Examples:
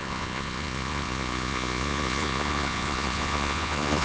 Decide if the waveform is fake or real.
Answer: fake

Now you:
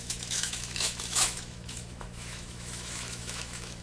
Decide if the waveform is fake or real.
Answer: fake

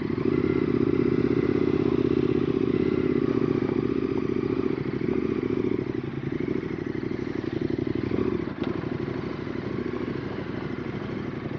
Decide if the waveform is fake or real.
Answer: real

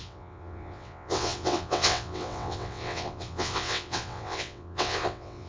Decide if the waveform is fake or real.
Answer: fake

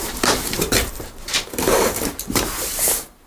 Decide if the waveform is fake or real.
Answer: fake